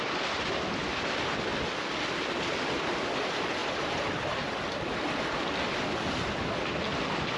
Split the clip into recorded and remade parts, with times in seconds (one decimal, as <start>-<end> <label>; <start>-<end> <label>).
0.0-1.5 recorded; 1.5-2.0 remade; 2.0-7.4 recorded